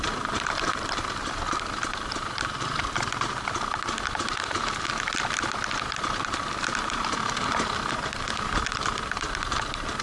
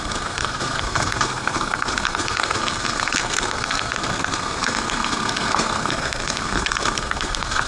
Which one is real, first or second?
first